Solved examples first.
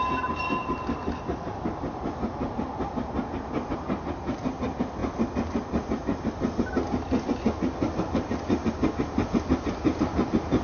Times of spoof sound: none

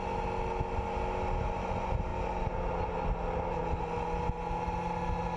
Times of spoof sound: none

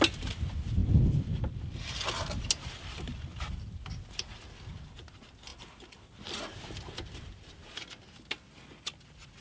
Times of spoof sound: none

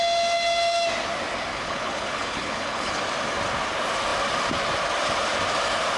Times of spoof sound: 1.5-3.0

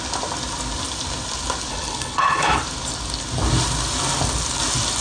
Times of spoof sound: 1.7-2.6

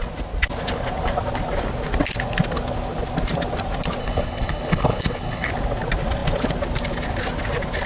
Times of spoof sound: 4.0-5.5